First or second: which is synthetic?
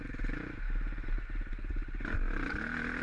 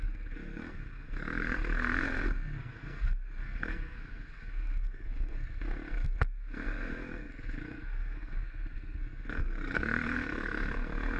second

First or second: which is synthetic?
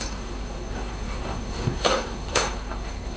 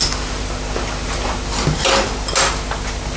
first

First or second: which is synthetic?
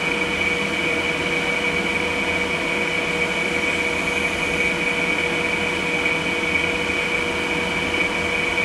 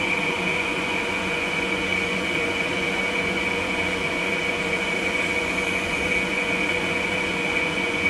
second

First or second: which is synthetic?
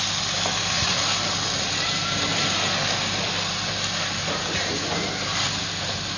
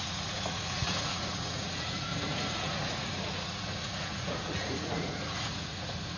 second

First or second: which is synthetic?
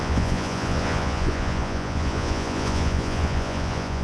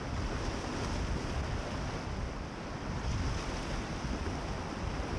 first